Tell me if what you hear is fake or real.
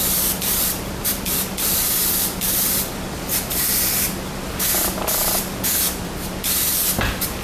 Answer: fake